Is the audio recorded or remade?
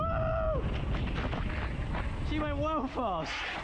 recorded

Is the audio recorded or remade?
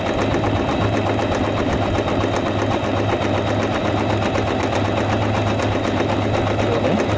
recorded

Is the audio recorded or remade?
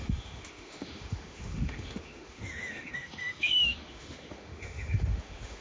remade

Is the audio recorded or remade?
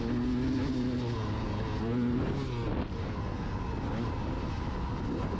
recorded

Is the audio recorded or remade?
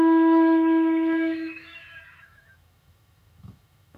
remade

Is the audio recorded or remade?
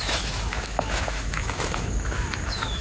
remade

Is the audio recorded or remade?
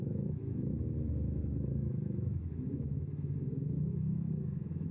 remade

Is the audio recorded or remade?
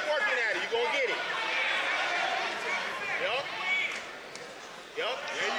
recorded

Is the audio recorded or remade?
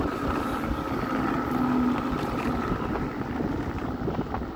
recorded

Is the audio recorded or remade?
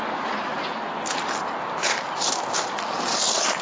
recorded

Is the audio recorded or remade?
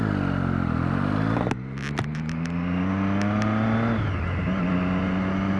recorded